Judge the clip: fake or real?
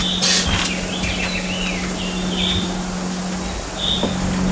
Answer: real